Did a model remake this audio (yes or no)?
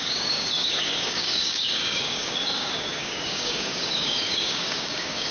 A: yes